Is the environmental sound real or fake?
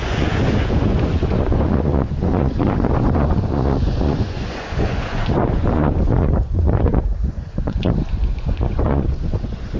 fake